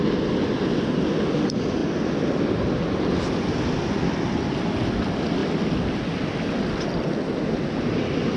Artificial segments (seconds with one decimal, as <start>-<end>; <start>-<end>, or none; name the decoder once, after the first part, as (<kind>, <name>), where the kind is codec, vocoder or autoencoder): none